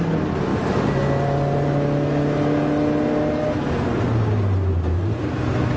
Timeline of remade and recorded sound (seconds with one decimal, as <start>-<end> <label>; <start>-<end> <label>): 0.0-5.8 recorded